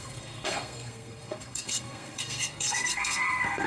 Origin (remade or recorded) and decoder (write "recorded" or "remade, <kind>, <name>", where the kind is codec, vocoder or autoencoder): remade, codec, SNAC